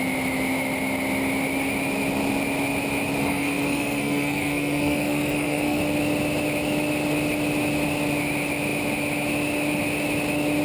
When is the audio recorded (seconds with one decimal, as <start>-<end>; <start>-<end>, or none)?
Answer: 0.0-3.2; 5.8-10.6